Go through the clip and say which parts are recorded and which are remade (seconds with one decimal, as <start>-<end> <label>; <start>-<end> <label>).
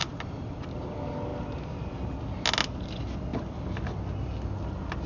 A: 0.0-5.1 recorded